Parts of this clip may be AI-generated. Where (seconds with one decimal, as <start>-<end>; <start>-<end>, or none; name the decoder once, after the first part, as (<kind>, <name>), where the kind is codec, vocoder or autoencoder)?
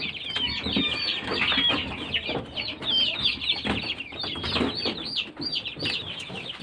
none